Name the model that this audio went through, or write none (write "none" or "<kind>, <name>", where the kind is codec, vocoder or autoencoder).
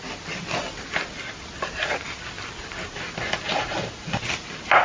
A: none